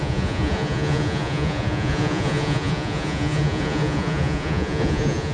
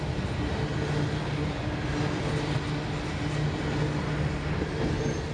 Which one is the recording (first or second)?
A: second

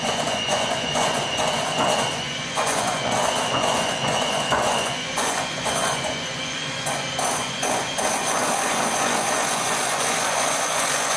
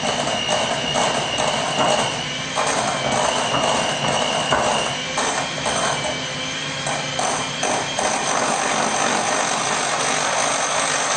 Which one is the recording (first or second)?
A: second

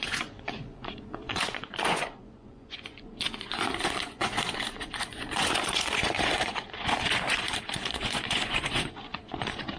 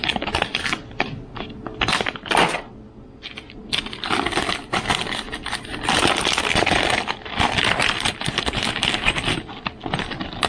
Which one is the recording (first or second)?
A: second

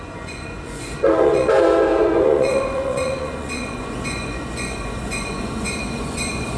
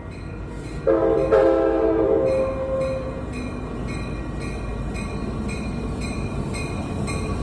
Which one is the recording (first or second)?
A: second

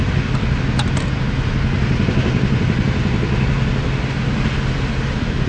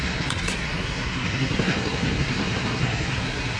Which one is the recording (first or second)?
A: first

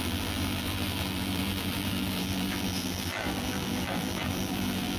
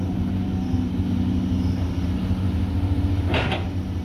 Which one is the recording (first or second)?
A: second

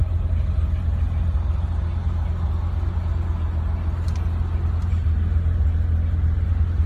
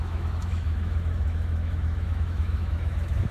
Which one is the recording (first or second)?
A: first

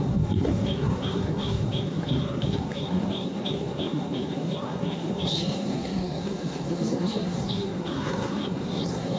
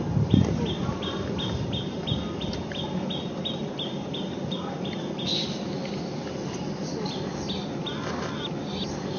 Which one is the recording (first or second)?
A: second